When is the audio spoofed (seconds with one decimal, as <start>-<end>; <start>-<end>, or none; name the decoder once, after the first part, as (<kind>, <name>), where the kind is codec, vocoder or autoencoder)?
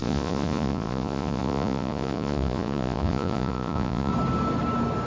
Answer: 0.0-4.1 (vocoder, Vocos)